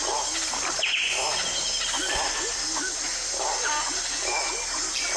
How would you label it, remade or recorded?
recorded